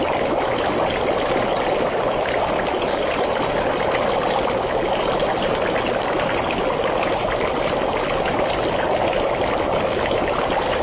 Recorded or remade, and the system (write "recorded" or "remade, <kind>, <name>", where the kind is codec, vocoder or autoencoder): recorded